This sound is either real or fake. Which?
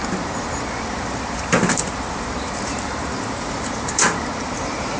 fake